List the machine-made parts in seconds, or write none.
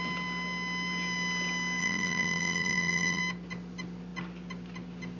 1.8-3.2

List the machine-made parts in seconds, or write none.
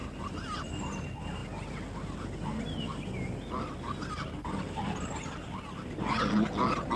none